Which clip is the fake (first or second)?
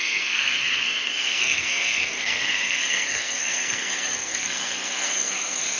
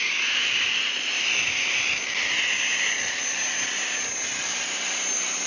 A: first